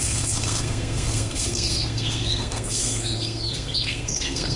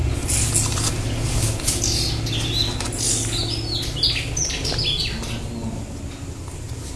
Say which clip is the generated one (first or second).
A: first